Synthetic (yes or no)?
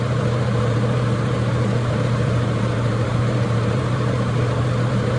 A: yes